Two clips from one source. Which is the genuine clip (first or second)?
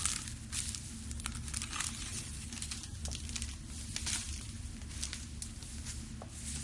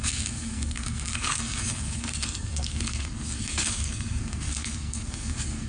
first